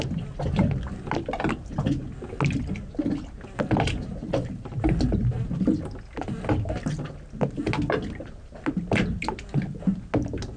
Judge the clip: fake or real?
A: real